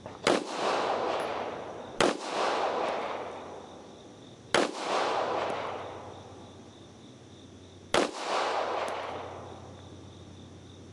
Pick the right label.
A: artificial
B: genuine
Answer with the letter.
B